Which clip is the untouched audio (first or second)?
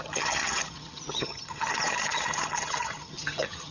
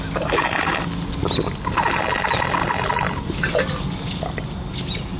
second